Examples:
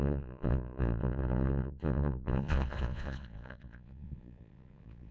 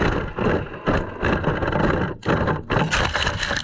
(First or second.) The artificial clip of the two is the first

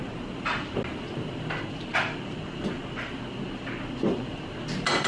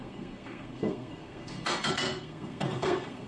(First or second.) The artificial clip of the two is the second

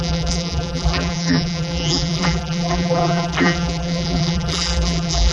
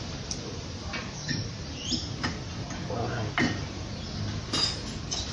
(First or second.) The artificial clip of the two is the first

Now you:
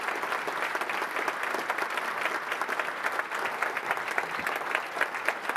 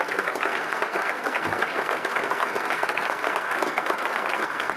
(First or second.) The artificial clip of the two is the second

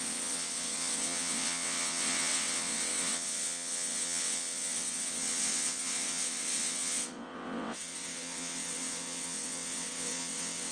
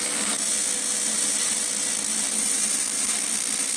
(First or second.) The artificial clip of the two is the first